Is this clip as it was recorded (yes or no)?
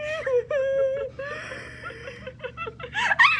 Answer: yes